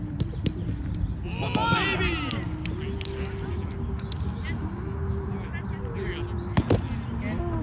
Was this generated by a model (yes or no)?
no